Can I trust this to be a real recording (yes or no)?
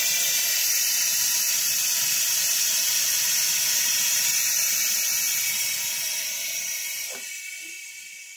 yes